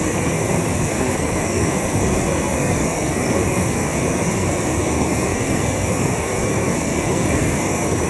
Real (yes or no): no